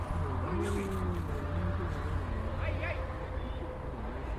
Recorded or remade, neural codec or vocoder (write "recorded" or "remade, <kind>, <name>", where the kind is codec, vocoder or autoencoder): recorded